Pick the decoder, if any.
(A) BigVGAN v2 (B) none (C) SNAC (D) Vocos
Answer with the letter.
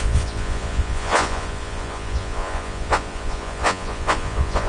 D